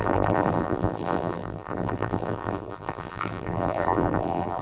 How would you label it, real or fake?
fake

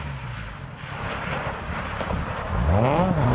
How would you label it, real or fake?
real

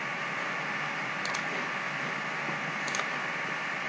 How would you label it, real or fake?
real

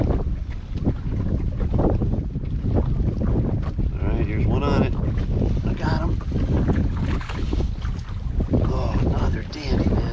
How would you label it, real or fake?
real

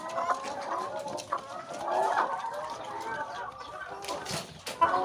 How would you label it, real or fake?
real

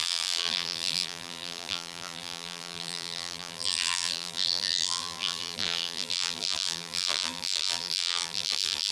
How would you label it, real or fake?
fake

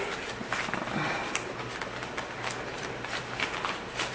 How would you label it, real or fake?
real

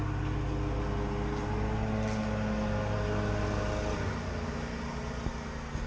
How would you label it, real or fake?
real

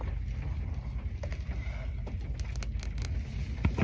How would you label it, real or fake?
real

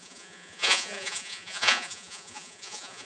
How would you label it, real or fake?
fake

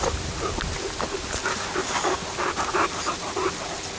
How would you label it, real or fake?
real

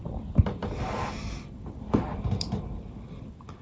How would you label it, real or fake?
real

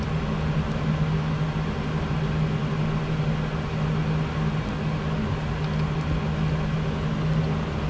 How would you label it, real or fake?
real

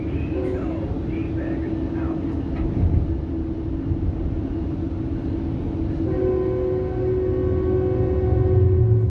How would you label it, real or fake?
real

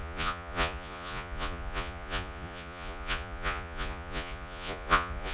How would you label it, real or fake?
fake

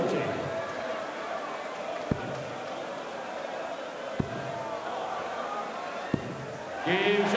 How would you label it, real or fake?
real